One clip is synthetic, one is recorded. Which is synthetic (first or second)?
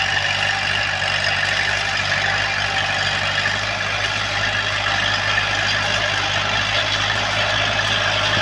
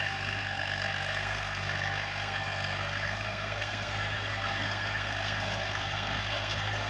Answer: second